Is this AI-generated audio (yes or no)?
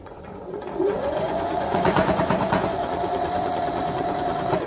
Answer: yes